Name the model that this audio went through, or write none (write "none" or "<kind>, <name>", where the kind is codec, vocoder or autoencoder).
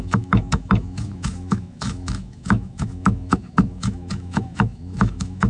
autoencoder, DAC-VAE